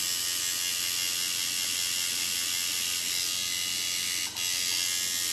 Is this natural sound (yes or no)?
yes